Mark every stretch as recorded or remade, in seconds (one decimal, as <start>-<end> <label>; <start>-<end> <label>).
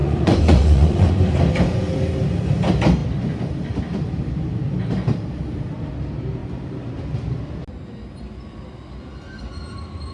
0.0-1.1 remade; 1.1-10.1 recorded